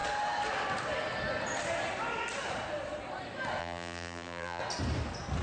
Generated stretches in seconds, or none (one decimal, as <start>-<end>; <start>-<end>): 3.6-4.6